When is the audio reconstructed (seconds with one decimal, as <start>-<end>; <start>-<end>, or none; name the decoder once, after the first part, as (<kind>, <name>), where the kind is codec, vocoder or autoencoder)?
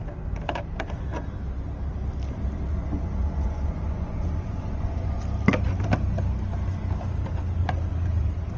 2.7-5.2 (vocoder, Vocos)